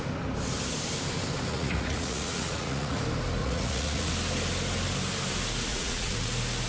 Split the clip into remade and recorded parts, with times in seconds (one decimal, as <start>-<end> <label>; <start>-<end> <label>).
0.0-1.5 recorded; 1.5-3.0 remade; 3.0-3.4 recorded; 3.4-4.1 remade; 4.1-5.7 recorded; 5.7-6.3 remade; 6.3-6.7 recorded